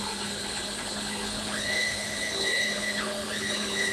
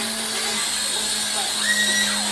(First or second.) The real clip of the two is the second